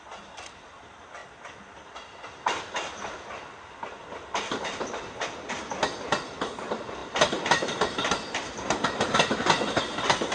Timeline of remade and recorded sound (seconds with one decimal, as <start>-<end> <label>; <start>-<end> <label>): 0.0-10.3 recorded